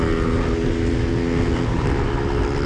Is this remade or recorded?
recorded